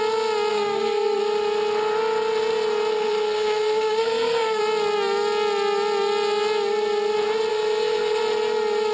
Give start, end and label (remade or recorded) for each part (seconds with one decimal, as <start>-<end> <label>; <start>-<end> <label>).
0.0-0.5 recorded; 0.5-1.2 remade; 1.2-2.9 recorded; 2.9-4.6 remade; 4.6-7.5 recorded; 7.5-8.2 remade; 8.2-8.9 recorded